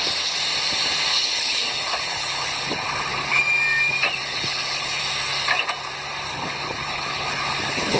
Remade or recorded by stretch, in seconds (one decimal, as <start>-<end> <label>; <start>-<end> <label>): 0.0-1.1 recorded; 1.1-3.4 remade; 3.4-4.2 recorded; 4.2-5.0 remade; 5.0-6.3 recorded; 6.3-8.0 remade

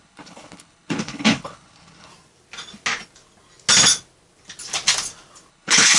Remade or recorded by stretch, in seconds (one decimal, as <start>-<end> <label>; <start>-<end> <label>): 0.0-2.1 remade; 2.1-5.5 recorded; 5.5-6.0 remade